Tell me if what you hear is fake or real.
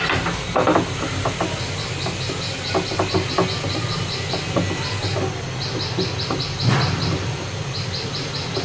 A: real